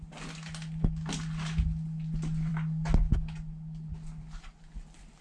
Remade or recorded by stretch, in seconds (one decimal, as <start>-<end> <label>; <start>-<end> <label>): 0.0-5.2 recorded